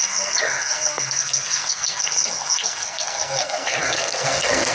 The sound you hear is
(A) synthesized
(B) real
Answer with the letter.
A